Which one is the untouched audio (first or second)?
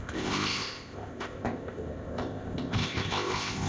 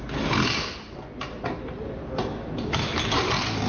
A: second